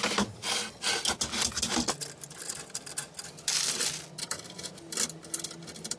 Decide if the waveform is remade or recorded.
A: recorded